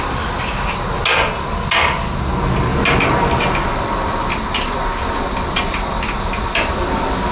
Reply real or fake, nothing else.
real